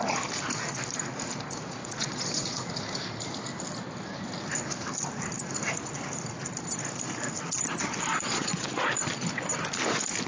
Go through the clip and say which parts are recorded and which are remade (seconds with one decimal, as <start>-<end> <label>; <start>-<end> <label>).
0.0-1.8 recorded; 1.8-2.7 remade; 2.7-8.1 recorded; 8.1-9.0 remade; 9.0-10.3 recorded